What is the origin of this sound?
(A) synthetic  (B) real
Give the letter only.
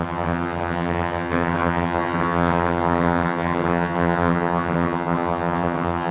A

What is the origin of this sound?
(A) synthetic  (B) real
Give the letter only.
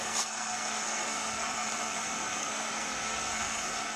A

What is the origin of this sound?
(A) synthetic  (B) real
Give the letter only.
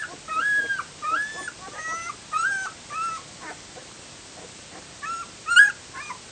B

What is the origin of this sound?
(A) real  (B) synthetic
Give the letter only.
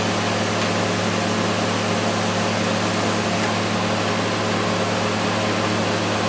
A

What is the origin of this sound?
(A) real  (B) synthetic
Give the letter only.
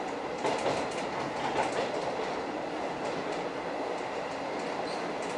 A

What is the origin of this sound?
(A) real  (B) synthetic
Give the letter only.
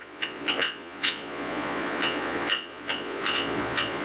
B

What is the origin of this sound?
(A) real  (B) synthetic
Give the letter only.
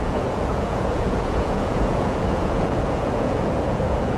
B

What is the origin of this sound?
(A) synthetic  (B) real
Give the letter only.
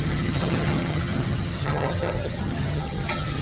A